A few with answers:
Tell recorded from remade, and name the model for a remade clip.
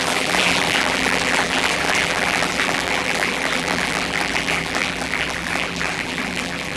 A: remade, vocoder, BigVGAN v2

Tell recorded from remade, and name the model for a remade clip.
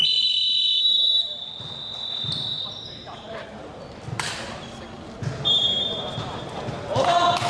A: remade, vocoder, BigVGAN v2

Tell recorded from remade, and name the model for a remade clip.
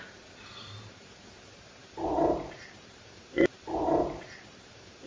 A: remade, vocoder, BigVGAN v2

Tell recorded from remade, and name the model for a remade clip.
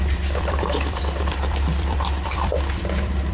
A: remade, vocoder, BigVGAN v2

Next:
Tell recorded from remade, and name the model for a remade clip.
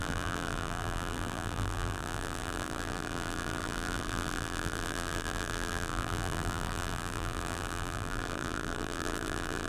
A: remade, vocoder, BigVGAN v2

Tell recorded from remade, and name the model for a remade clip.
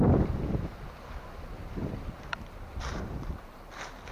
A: remade, vocoder, BigVGAN v2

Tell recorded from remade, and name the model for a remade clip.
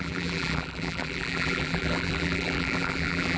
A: remade, vocoder, BigVGAN v2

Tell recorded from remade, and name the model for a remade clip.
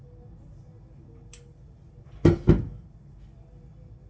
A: recorded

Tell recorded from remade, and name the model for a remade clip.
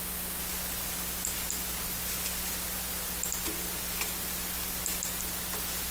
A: recorded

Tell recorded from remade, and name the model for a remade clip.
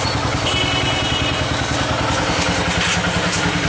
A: recorded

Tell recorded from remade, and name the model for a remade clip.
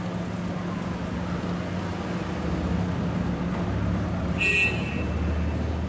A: recorded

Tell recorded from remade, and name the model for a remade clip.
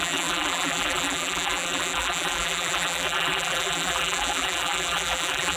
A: remade, vocoder, BigVGAN v2